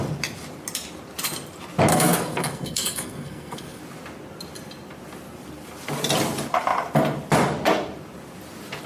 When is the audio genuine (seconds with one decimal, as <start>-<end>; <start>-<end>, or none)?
0.0-1.9; 3.8-8.9